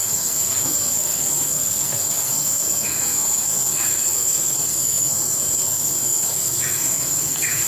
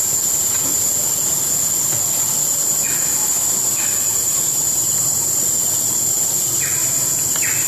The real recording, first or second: second